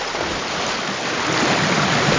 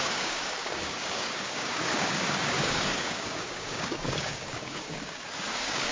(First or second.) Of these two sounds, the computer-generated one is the second